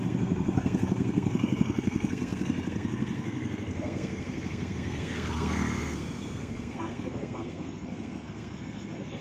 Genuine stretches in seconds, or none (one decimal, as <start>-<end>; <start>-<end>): none